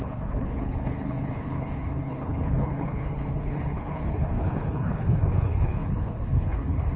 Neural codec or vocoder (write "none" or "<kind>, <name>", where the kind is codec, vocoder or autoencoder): codec, HILCodec